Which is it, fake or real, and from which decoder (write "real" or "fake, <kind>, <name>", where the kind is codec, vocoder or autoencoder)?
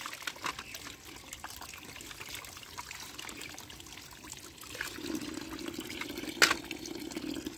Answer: real